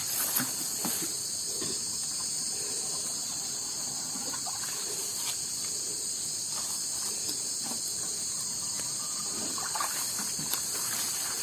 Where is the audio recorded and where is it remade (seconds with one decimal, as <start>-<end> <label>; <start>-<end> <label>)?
0.0-11.4 recorded